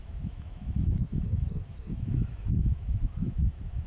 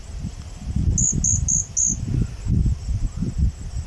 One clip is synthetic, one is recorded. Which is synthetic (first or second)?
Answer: first